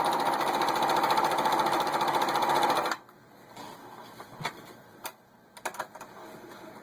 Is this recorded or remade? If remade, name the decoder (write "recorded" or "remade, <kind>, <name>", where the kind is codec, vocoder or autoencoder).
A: remade, vocoder, BigVGAN v2